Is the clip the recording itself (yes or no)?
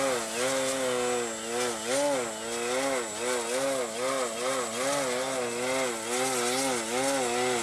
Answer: yes